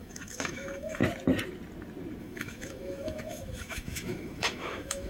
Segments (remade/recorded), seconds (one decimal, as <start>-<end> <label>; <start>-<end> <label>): 0.0-1.0 remade; 1.0-2.2 recorded; 2.2-5.1 remade